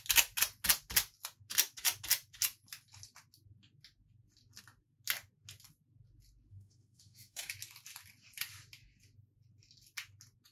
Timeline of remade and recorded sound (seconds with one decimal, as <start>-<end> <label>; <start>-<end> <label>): 0.0-6.5 recorded; 6.5-7.5 remade; 7.5-10.5 recorded